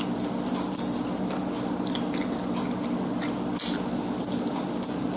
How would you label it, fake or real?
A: real